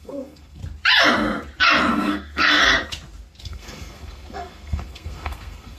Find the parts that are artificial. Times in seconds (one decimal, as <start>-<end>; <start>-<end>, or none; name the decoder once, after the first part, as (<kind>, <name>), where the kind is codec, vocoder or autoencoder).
0.0-0.6 (codec, SNAC); 1.9-2.6; 3.4-5.8